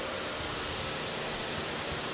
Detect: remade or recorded recorded